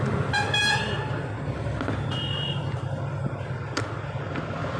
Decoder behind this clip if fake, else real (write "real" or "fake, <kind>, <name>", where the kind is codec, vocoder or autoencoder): real